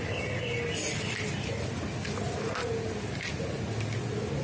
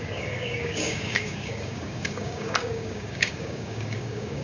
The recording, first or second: first